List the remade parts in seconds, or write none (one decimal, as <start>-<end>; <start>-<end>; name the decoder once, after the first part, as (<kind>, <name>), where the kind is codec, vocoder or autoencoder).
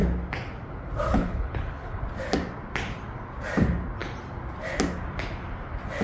1.1-2.0 (codec, HILCodec)